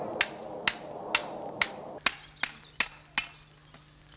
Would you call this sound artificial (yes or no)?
no